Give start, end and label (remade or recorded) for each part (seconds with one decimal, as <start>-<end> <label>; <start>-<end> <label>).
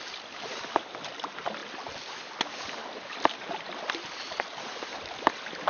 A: 0.0-5.7 recorded